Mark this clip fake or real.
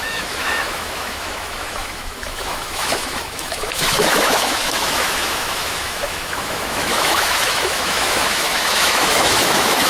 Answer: fake